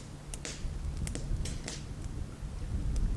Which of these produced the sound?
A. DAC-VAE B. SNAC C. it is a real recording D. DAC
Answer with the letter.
C